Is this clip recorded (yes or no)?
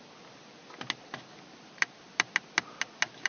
yes